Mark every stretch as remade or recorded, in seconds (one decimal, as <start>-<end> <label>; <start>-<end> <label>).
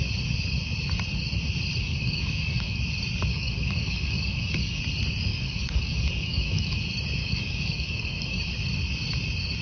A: 0.0-1.8 recorded; 1.8-2.8 remade; 2.8-3.3 recorded; 3.3-4.8 remade; 4.8-5.3 recorded; 5.3-6.8 remade; 6.8-7.2 recorded; 7.2-8.4 remade; 8.4-9.6 recorded